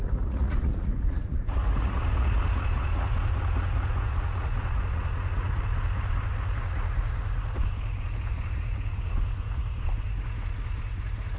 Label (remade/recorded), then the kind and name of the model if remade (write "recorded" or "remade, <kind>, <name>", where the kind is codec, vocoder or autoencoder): remade, vocoder, Vocos